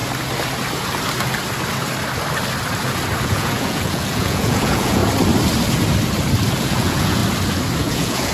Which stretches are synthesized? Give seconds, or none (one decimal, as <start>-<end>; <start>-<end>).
3.2-5.0; 6.7-7.2; 7.8-8.3